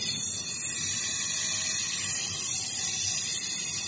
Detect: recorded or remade recorded